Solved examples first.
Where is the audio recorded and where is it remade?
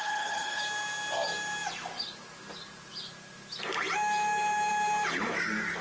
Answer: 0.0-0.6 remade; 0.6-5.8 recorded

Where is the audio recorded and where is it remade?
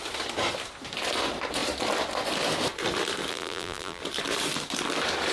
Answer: 0.0-3.3 recorded; 3.3-4.0 remade; 4.0-5.3 recorded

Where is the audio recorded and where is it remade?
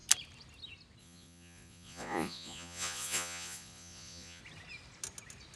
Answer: 0.0-1.0 recorded; 1.0-4.4 remade; 4.4-5.6 recorded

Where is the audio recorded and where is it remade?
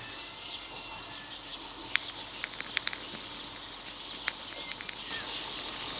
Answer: 0.0-6.0 recorded